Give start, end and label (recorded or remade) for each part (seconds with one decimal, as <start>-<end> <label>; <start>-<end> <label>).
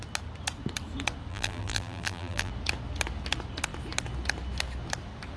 0.0-1.3 recorded; 1.3-2.5 remade; 2.5-5.4 recorded